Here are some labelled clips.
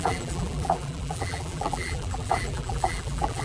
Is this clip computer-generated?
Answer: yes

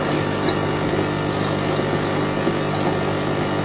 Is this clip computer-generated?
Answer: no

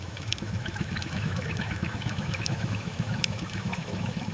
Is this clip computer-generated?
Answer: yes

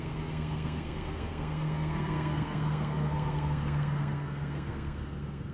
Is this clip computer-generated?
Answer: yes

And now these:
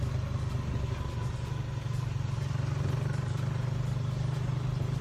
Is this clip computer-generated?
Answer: no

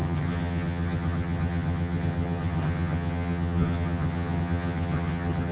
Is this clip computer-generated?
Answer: yes